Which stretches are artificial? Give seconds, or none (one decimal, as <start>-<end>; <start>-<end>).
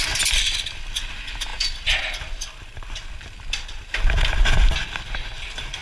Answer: none